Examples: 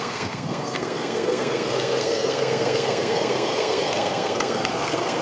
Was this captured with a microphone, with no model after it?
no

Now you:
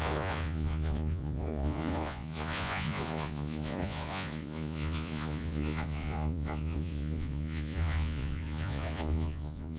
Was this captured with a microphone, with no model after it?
no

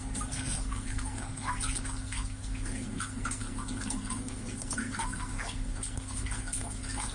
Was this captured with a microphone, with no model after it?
no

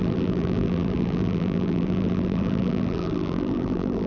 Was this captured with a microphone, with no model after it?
no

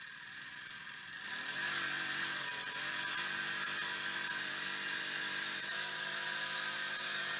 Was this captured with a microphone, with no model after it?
yes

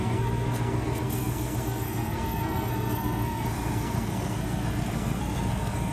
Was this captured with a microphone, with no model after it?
no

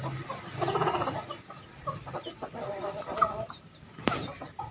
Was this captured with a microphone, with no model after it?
yes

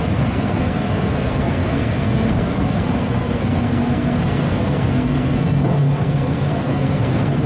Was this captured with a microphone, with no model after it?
no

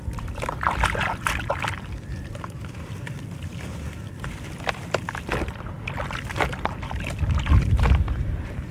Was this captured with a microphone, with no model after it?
yes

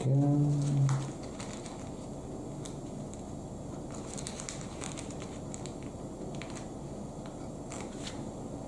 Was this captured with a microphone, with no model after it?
yes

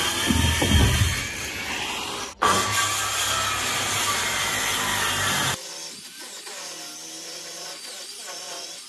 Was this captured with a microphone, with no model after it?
yes